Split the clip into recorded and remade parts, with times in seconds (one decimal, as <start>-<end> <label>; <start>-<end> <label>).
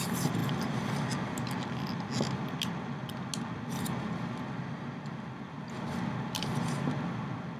0.0-7.6 recorded